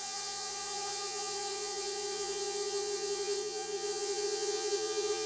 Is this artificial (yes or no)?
yes